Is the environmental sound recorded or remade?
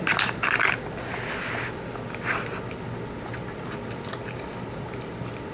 recorded